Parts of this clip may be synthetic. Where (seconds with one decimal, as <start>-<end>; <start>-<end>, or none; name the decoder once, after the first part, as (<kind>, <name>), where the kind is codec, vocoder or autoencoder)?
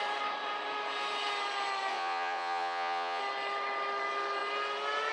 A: 1.9-3.2 (vocoder, Vocos)